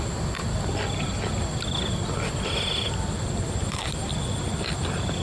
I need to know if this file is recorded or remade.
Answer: recorded